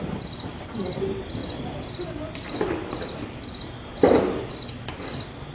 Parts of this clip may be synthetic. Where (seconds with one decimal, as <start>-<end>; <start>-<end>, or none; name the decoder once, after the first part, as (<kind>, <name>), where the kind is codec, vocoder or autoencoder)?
none